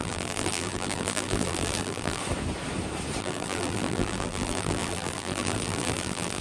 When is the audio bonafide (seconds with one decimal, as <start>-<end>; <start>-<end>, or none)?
2.2-3.2